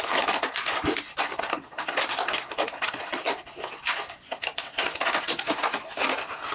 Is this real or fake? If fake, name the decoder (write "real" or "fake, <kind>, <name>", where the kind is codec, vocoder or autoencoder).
real